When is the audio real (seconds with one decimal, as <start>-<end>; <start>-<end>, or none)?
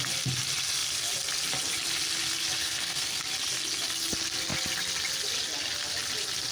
0.0-2.6; 3.2-6.5